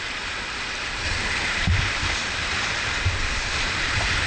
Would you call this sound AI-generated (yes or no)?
yes